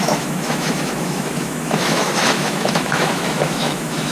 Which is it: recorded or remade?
remade